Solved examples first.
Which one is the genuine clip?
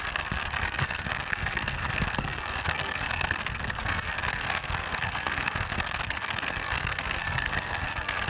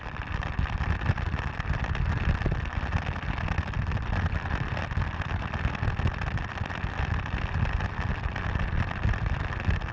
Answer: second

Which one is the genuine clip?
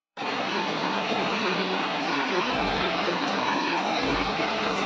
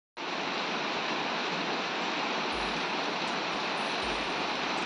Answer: second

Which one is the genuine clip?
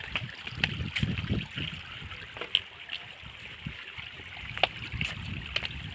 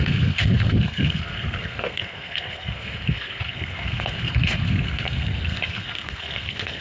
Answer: first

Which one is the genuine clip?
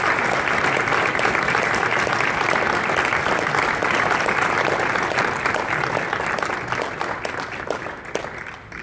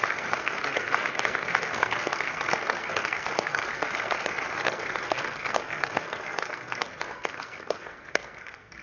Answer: first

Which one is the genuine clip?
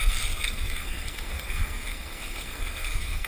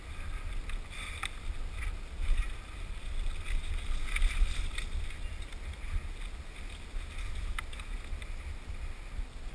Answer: second